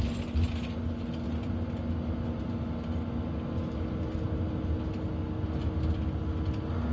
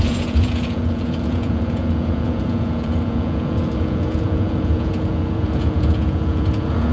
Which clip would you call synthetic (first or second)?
second